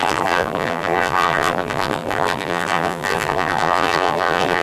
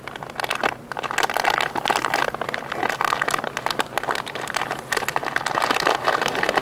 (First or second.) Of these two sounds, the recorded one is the second